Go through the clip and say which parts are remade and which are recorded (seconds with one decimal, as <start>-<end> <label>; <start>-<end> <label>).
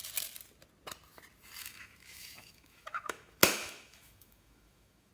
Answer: 0.0-1.6 recorded; 1.6-5.1 remade